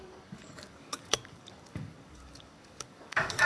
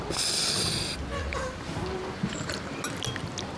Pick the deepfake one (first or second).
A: first